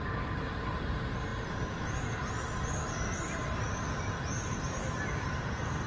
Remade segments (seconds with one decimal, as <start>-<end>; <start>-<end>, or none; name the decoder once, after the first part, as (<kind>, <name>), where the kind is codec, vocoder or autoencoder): none